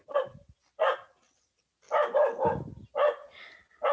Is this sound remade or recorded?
recorded